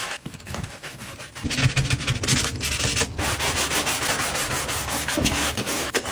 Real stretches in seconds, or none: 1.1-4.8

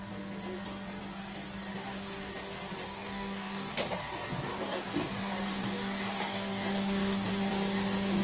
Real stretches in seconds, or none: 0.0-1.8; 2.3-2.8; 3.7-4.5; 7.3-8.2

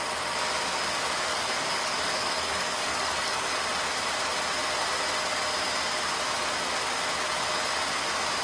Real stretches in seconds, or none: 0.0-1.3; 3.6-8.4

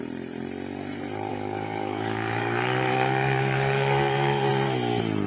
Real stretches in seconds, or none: 0.0-1.3; 4.5-5.3